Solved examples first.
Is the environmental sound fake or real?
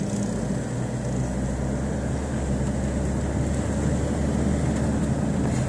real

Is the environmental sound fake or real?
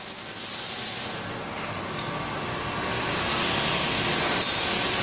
real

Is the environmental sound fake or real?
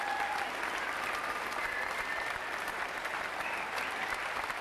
fake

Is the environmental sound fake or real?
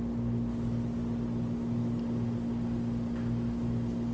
real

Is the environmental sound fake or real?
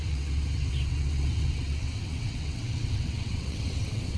fake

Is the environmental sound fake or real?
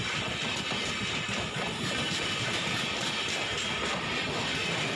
real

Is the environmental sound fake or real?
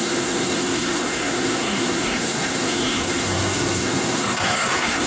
fake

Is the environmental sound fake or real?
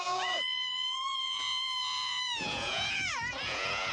fake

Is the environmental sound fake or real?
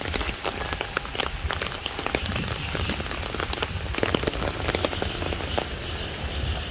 real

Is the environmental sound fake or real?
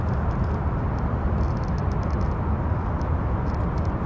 real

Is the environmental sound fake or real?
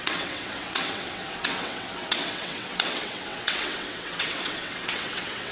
fake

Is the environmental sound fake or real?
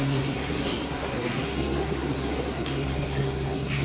fake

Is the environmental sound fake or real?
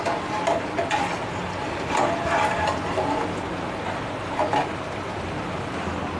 real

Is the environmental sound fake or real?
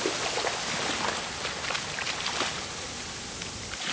real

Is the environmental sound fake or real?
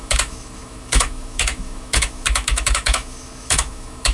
fake